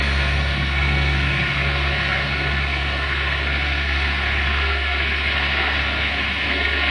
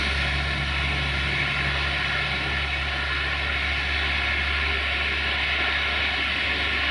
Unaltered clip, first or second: second